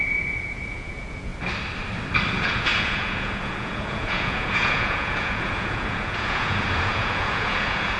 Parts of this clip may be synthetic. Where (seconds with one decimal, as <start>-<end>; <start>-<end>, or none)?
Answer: 0.0-1.3; 2.3-8.0